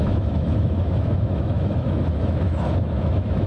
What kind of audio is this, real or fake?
fake